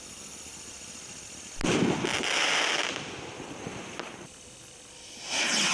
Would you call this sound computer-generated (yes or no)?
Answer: no